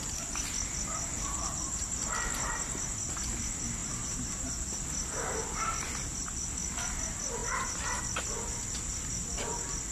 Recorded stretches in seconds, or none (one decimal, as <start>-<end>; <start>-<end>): 0.0-1.1; 2.1-3.8; 4.4-9.9